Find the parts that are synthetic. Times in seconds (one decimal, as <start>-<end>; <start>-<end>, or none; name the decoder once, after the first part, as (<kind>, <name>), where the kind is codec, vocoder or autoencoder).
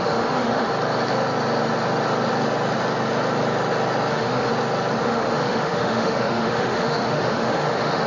0.0-0.7 (autoencoder, DAC-VAE); 4.1-4.5; 5.0-8.1